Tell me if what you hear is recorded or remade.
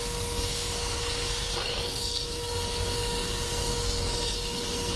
remade